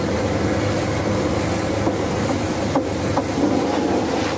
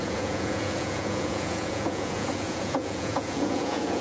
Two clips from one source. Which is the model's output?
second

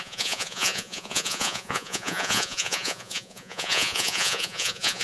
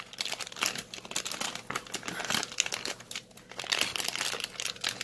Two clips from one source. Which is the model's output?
first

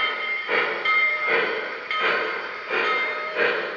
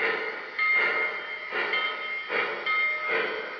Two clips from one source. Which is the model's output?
first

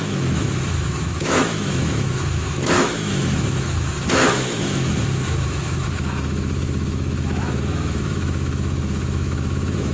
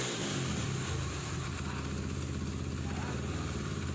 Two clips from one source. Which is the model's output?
first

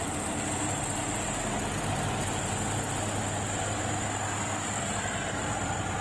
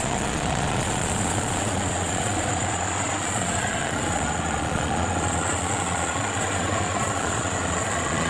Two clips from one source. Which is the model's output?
second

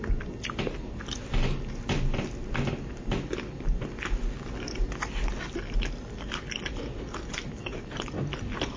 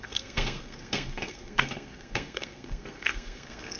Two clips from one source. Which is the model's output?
second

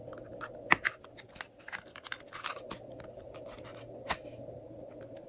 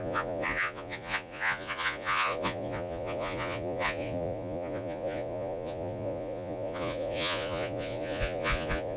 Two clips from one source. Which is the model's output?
second